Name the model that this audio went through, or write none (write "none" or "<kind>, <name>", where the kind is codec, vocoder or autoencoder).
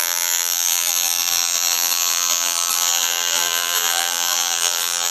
vocoder, BigVGAN v2